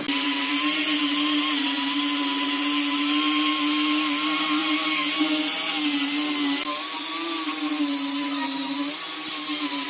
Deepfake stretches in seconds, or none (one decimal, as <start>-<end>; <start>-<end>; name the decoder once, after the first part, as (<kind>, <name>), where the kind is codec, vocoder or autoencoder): 4.6-5.2 (vocoder, BigVGAN v2)